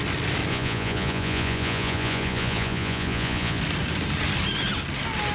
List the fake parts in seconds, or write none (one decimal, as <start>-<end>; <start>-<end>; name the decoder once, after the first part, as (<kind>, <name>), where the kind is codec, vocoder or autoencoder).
0.5-3.6 (vocoder, Vocos)